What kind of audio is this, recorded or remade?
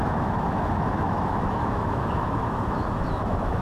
remade